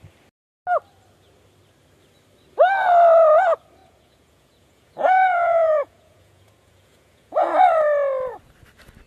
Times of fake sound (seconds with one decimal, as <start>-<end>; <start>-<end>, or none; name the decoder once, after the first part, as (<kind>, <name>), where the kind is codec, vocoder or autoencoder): 3.8-7.5 (vocoder, Vocos)